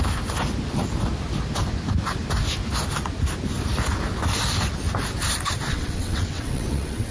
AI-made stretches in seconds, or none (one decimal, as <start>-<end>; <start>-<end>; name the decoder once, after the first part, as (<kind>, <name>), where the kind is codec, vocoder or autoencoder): 5.7-7.1 (vocoder, WaveNeXt)